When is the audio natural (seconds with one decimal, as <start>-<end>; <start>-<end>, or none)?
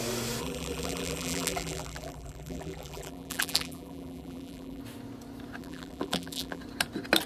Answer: 0.0-0.4; 4.8-5.6; 6.6-7.3